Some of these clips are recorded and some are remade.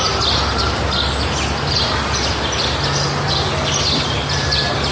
recorded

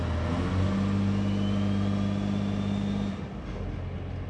recorded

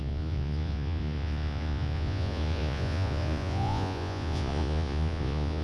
remade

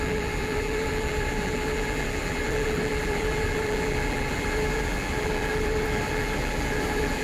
remade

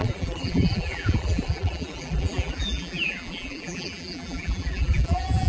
remade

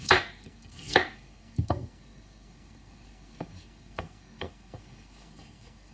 remade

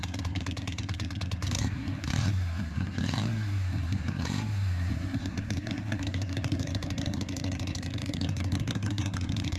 remade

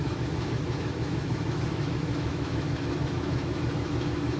remade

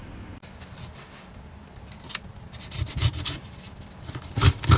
recorded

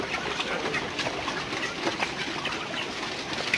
recorded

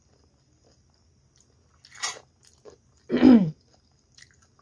recorded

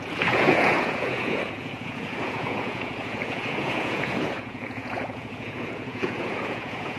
remade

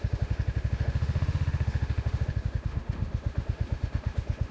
remade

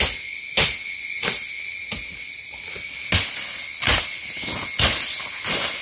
recorded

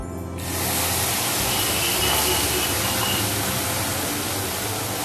recorded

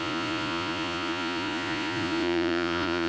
remade